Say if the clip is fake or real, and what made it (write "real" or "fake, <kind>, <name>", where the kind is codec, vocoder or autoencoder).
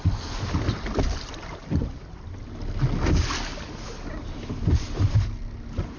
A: real